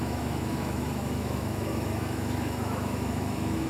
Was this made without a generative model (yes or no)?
no